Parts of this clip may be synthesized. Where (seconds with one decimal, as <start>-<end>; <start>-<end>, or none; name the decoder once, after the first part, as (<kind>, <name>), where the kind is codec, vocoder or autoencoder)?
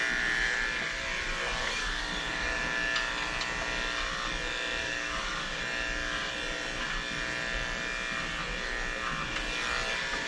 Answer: 1.6-2.6 (codec, DAC); 4.8-5.6